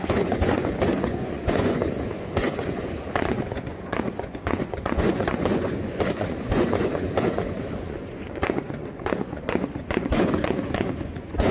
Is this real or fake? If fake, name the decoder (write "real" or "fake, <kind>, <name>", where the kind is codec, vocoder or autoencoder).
fake, vocoder, Vocos